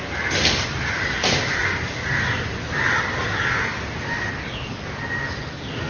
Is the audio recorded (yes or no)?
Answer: yes